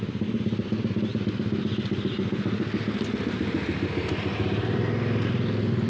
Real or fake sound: real